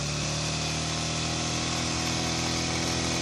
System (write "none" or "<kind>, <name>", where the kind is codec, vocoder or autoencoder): none